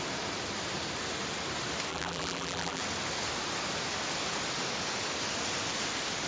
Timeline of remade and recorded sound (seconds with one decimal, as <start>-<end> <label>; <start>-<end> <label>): 0.0-1.9 recorded; 1.9-2.8 remade; 2.8-6.3 recorded

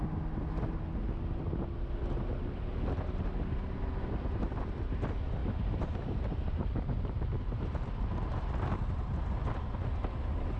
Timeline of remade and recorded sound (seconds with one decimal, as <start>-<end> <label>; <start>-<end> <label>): 0.0-5.4 recorded; 5.4-9.5 remade; 9.5-10.6 recorded

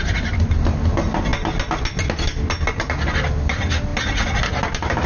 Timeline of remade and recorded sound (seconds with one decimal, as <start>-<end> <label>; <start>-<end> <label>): 0.0-5.1 recorded